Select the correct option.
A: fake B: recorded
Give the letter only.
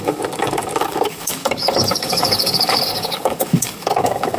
A